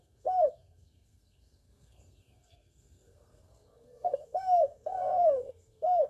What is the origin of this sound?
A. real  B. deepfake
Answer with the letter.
B